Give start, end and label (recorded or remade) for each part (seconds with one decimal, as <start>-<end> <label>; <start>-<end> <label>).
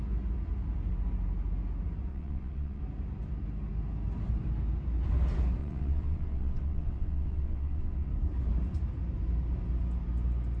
0.0-2.1 recorded; 2.1-2.8 remade; 2.8-5.6 recorded; 5.6-8.1 remade; 8.1-10.6 recorded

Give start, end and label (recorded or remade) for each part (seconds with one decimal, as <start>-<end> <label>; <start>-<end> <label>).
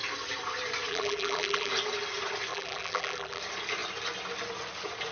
0.0-0.9 recorded; 0.9-1.7 remade; 1.7-2.5 recorded; 2.5-3.4 remade; 3.4-5.1 recorded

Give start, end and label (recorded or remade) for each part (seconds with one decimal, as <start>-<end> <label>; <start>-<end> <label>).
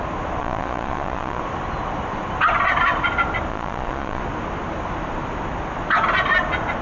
0.0-0.4 recorded; 0.4-1.4 remade; 1.4-3.5 recorded; 3.5-4.2 remade; 4.2-6.8 recorded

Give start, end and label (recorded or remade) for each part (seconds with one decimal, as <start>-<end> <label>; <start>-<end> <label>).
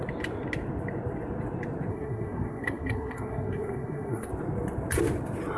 0.0-1.9 recorded; 1.9-4.3 remade; 4.3-5.6 recorded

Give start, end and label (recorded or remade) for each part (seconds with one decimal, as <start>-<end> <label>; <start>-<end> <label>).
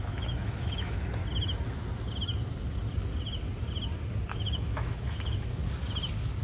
0.0-1.2 remade; 1.2-4.3 recorded; 4.3-5.6 remade; 5.6-6.4 recorded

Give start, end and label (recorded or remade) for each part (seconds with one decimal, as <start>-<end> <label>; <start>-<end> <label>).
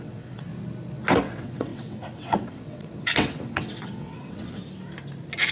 0.0-0.5 remade; 0.5-1.1 recorded; 1.1-4.6 remade; 4.6-5.5 recorded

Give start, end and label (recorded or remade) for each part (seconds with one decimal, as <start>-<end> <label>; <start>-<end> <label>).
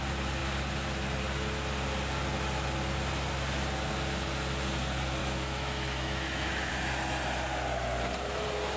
0.0-5.2 recorded; 5.2-6.7 remade; 6.7-8.8 recorded